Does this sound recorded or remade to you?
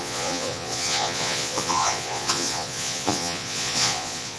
remade